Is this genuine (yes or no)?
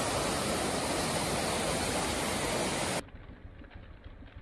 yes